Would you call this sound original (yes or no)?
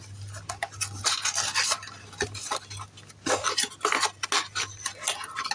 yes